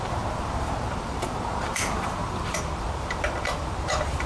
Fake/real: fake